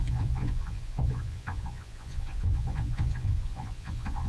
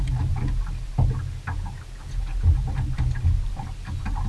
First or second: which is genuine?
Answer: second